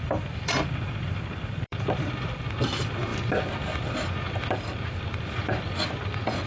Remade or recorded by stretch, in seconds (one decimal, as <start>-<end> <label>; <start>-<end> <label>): 0.0-3.1 remade; 3.1-4.5 recorded; 4.5-6.5 remade